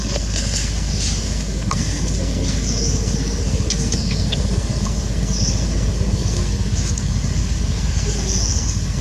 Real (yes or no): no